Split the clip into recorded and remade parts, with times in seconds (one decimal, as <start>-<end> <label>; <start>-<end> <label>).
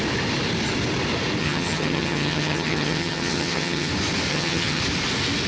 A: 0.0-1.4 recorded; 1.4-3.9 remade; 3.9-4.3 recorded; 4.3-4.8 remade; 4.8-5.5 recorded